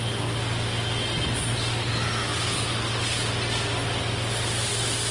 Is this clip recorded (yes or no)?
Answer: yes